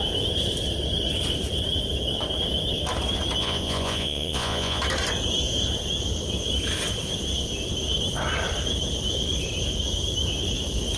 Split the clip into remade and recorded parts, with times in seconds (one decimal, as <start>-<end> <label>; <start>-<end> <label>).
0.0-3.4 recorded; 3.4-4.8 remade; 4.8-11.0 recorded